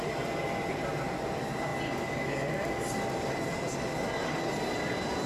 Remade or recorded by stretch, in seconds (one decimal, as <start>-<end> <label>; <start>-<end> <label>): 0.0-5.3 recorded